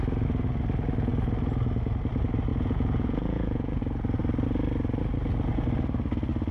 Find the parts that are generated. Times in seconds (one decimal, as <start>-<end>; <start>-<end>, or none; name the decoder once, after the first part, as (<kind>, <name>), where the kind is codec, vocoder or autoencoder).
2.5-3.8 (vocoder, Vocos)